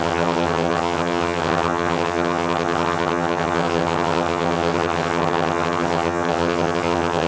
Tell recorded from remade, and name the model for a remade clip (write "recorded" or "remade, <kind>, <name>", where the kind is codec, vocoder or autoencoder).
remade, vocoder, HiFi-GAN